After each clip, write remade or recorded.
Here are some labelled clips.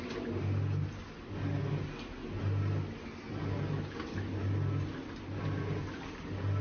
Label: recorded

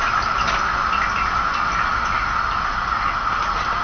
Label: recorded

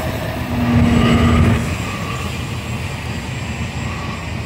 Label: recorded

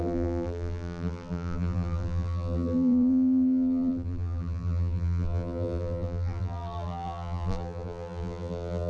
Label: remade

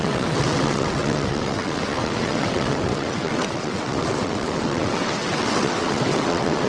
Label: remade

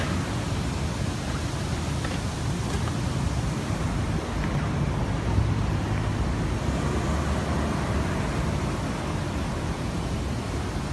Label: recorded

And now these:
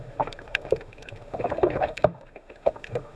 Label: remade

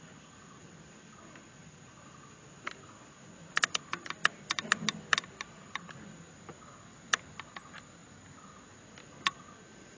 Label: recorded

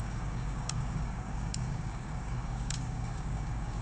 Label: remade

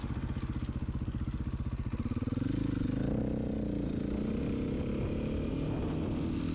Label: recorded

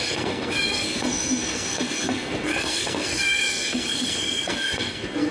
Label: remade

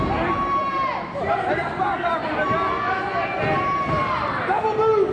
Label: recorded